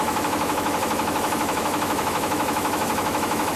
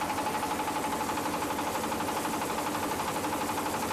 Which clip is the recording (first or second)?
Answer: second